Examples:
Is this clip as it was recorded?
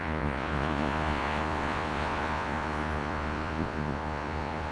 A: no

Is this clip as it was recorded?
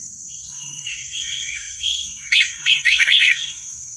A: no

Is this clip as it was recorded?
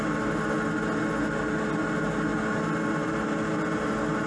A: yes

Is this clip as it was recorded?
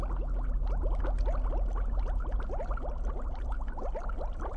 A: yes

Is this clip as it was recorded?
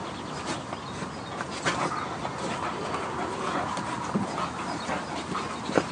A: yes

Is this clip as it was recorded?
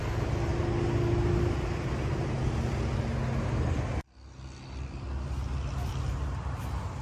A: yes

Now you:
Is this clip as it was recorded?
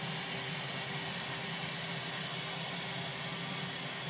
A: yes